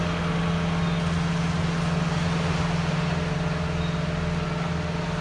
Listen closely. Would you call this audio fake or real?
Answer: real